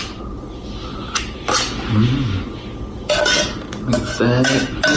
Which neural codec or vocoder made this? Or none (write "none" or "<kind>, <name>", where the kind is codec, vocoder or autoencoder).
none